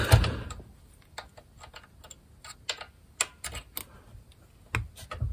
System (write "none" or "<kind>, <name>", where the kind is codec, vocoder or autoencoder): none